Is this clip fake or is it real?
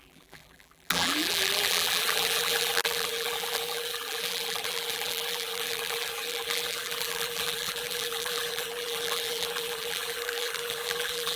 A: fake